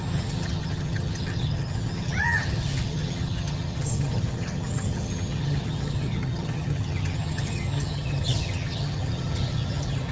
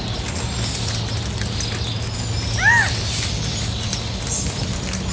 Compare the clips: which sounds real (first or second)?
second